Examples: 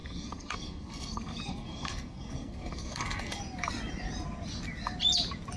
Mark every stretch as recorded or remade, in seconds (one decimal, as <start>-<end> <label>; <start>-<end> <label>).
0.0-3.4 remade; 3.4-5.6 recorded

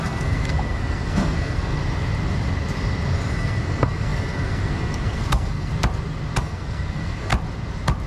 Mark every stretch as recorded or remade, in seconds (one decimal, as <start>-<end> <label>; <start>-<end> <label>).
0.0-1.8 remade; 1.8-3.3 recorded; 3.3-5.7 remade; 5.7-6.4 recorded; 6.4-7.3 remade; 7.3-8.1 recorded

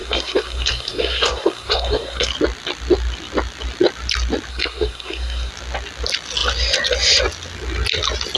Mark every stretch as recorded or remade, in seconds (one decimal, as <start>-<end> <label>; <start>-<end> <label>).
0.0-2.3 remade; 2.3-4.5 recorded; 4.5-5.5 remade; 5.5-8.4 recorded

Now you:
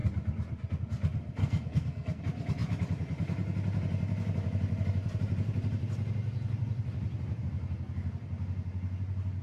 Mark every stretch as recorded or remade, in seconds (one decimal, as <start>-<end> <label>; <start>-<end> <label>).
0.0-1.4 recorded; 1.4-2.2 remade; 2.2-9.4 recorded